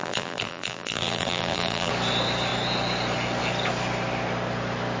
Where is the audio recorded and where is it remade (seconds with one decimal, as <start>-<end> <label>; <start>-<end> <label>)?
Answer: 0.0-1.9 remade; 1.9-5.0 recorded